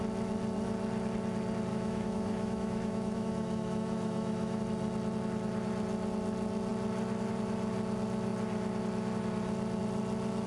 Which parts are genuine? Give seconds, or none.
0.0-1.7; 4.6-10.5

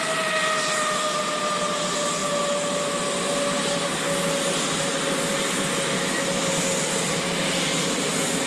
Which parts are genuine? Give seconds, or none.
0.0-8.5

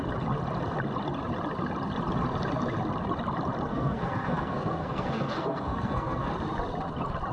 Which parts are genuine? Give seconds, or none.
0.0-3.7; 6.3-7.3

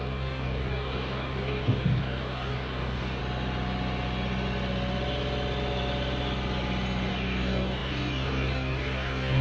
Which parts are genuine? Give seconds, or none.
3.2-7.1